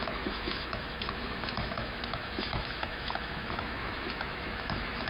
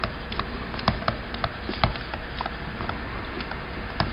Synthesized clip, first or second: first